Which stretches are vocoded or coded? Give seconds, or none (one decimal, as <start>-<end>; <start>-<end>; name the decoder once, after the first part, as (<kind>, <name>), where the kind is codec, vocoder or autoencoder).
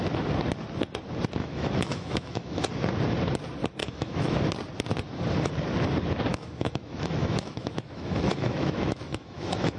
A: 1.4-2.7 (autoencoder, DAC-VAE); 3.8-4.4; 6.3-9.8